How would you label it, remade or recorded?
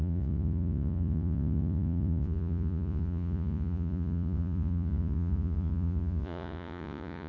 remade